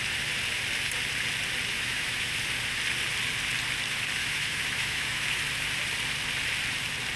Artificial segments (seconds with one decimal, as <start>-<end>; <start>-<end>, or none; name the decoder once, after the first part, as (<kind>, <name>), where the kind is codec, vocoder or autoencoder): 1.7-2.3 (autoencoder, DAC-VAE); 4.2-5.4